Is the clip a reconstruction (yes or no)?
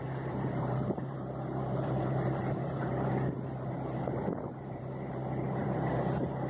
yes